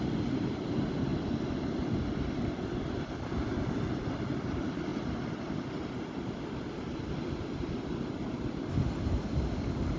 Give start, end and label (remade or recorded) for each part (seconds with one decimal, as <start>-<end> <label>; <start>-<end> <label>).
0.0-4.9 recorded; 4.9-5.7 remade; 5.7-10.0 recorded